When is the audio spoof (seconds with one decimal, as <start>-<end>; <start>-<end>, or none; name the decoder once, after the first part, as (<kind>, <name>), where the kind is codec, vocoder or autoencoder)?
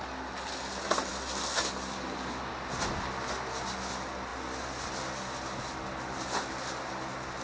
none